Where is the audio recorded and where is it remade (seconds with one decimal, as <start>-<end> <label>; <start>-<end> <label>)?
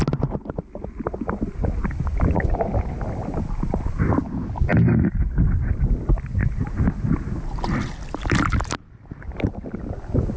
0.0-10.4 recorded